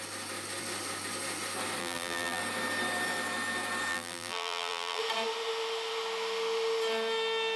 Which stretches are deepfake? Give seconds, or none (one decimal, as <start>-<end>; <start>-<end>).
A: 1.8-2.4; 3.9-5.0